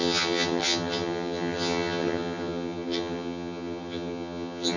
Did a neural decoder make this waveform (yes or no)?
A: yes